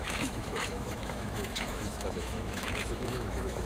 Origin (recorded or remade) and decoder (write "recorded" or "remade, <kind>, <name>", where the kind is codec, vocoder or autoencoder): remade, autoencoder, DAC-VAE